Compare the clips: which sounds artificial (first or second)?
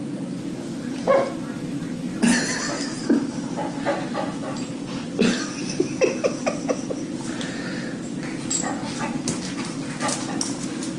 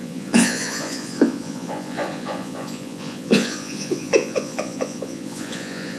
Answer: second